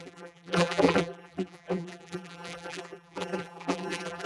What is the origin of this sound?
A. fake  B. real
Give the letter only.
A